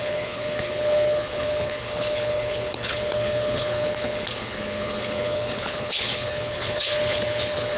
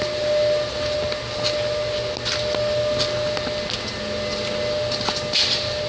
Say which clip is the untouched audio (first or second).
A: second